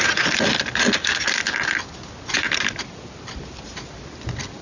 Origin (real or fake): real